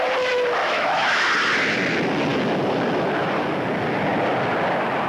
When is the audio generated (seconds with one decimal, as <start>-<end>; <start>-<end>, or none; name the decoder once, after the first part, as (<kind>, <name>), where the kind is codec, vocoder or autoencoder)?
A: 0.6-1.3 (autoencoder, DAC-VAE)